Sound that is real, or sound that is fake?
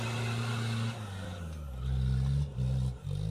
real